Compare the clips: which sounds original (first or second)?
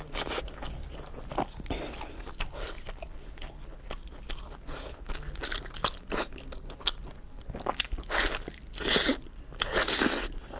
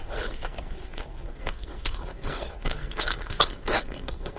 first